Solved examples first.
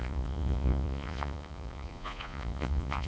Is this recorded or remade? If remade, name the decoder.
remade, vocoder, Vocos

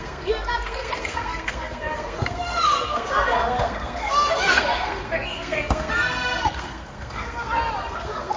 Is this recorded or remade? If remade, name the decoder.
remade, codec, SNAC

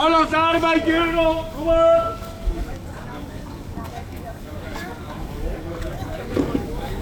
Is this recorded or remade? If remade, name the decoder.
remade, codec, DAC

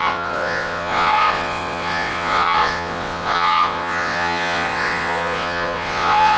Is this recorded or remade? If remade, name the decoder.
remade, vocoder, WaveNeXt